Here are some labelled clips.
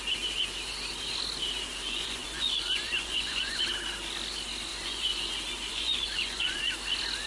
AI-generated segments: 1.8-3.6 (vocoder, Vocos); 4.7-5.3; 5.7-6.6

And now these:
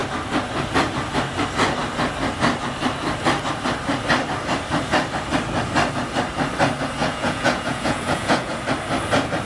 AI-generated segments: 7.0-8.6 (vocoder, Vocos)